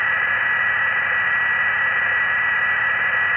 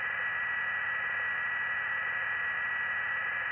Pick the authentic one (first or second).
second